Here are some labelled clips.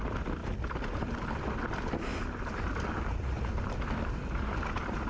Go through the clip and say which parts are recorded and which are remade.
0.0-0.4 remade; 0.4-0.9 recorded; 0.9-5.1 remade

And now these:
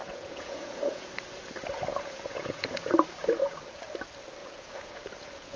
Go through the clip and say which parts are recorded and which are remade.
0.0-1.1 remade; 1.1-1.9 recorded; 1.9-2.9 remade; 2.9-3.4 recorded; 3.4-3.9 remade; 3.9-4.4 recorded; 4.4-5.6 remade

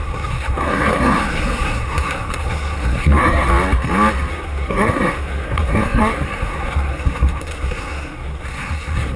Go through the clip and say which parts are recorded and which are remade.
0.0-3.5 remade; 3.5-4.3 recorded; 4.3-9.2 remade

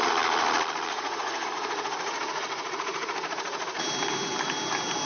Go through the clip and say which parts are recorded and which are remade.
0.0-0.9 recorded; 0.9-3.9 remade; 3.9-5.1 recorded

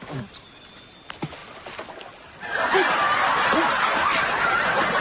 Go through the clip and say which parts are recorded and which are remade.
0.0-5.0 recorded

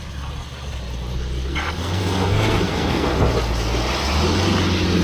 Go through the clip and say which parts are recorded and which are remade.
0.0-1.4 recorded; 1.4-3.3 remade; 3.3-5.0 recorded